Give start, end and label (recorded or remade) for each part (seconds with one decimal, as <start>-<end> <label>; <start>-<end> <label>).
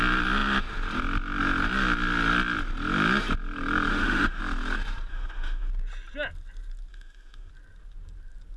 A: 0.0-3.9 recorded; 3.9-4.4 remade; 4.4-5.1 recorded; 5.1-5.7 remade; 5.7-6.9 recorded; 6.9-7.5 remade; 7.5-8.6 recorded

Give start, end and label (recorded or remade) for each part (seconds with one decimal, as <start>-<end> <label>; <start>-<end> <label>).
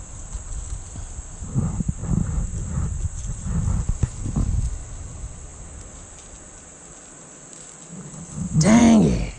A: 0.0-9.4 recorded